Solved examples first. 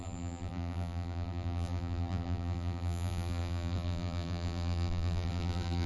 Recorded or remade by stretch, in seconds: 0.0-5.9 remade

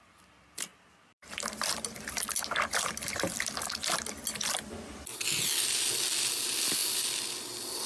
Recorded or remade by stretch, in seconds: 0.0-7.9 recorded

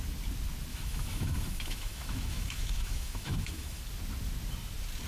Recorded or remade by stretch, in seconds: 0.0-0.7 recorded; 0.7-3.8 remade; 3.8-5.1 recorded